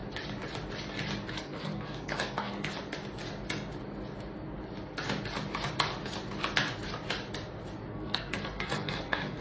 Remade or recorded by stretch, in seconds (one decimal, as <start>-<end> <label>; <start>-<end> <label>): 0.0-1.3 recorded; 1.3-2.7 remade; 2.7-7.9 recorded; 7.9-9.4 remade